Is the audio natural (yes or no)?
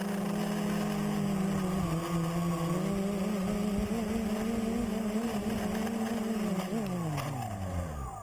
yes